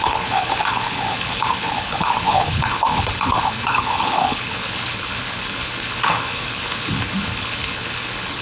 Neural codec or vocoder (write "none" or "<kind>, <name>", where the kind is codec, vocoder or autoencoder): codec, HILCodec